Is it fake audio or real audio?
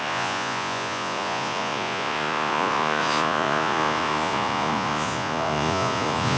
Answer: fake